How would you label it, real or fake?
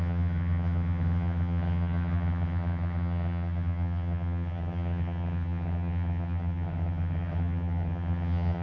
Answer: fake